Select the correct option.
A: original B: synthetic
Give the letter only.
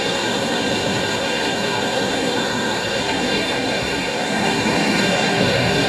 B